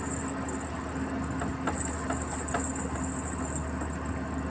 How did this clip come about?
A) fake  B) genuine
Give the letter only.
B